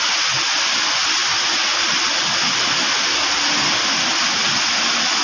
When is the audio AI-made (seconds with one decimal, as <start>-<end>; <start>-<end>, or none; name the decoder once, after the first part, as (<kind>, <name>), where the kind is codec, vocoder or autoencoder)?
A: none